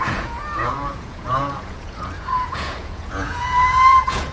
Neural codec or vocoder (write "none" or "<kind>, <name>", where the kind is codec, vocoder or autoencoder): vocoder, Vocos